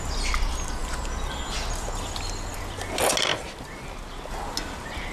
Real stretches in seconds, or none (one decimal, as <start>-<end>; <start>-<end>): 0.0-5.1